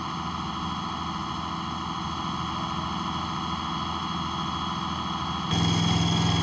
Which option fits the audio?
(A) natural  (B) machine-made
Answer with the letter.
A